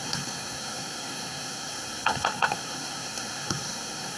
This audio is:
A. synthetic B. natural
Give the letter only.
A